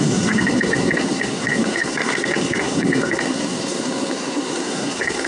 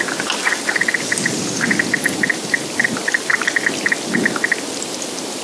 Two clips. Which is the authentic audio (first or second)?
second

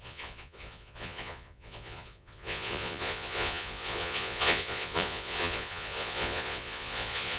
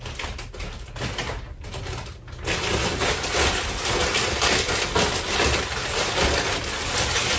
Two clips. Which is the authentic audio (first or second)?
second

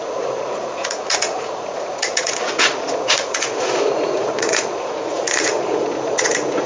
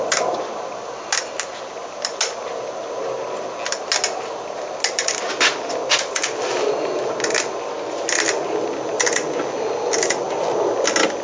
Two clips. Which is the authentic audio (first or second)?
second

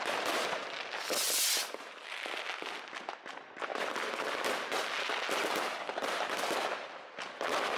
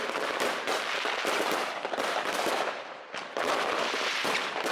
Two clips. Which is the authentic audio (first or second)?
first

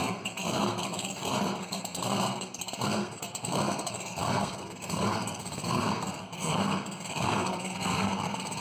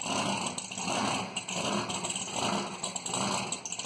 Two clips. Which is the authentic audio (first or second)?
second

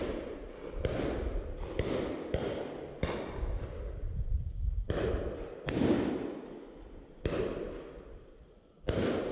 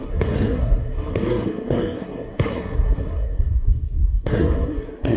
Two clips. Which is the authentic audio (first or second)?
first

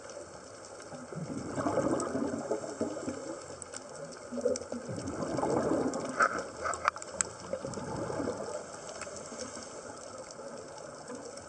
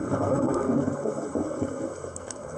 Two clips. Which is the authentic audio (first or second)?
first